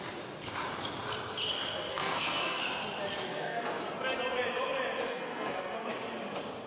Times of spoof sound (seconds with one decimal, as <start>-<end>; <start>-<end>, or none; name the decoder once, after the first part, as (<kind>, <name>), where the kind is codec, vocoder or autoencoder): 1.9-2.6 (codec, SNAC); 3.3-3.9; 5.1-5.9